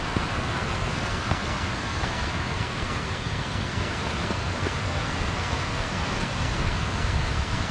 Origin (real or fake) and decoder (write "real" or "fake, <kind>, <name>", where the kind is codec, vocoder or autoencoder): fake, codec, SNAC